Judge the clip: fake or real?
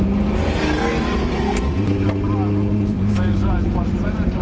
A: real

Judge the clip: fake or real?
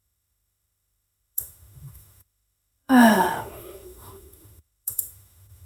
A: fake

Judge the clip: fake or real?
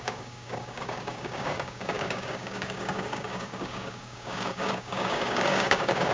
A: fake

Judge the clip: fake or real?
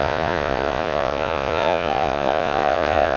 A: fake